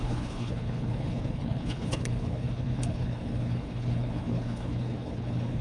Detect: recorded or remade remade